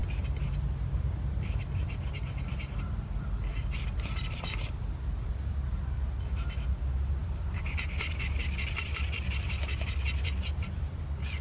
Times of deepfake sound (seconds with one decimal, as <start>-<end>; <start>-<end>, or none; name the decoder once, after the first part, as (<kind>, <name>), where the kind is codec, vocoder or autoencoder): 3.5-5.5 (vocoder, BigVGAN v2); 7.2-9.6